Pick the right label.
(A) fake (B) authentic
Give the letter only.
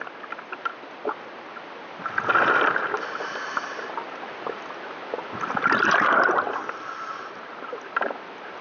B